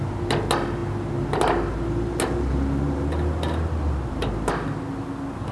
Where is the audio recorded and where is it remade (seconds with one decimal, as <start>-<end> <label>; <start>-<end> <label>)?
0.0-5.5 recorded

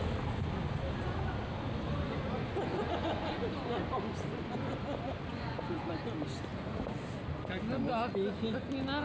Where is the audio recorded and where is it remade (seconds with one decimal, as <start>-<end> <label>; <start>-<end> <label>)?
0.0-2.7 recorded; 2.7-3.5 remade; 3.5-5.3 recorded; 5.3-5.9 remade; 5.9-9.0 recorded

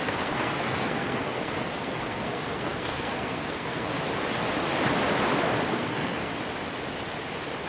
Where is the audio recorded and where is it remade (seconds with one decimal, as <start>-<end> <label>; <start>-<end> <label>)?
0.0-3.9 remade; 3.9-5.7 recorded; 5.7-6.3 remade; 6.3-7.7 recorded

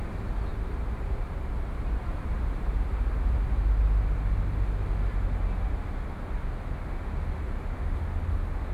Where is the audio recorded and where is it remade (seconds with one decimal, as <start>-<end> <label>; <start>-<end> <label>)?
0.0-0.5 recorded; 0.5-1.5 remade; 1.5-2.0 recorded; 2.0-3.6 remade; 3.6-8.7 recorded

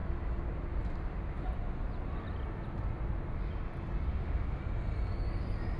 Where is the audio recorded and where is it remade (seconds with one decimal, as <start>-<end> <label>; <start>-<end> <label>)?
0.0-4.1 recorded; 4.1-4.6 remade; 4.6-5.8 recorded

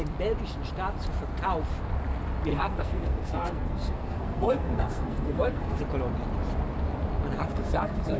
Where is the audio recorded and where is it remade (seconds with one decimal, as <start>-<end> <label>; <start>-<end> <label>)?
0.0-2.5 recorded; 2.5-5.8 remade; 5.8-7.4 recorded; 7.4-8.2 remade

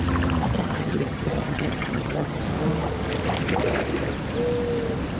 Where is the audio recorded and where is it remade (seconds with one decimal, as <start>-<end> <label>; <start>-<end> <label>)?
0.0-0.6 recorded; 0.6-2.4 remade; 2.4-5.2 recorded

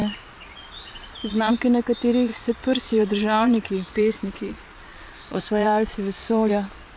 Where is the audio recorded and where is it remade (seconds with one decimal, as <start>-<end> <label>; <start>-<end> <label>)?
0.0-1.5 remade; 1.5-2.3 recorded; 2.3-6.5 remade; 6.5-7.0 recorded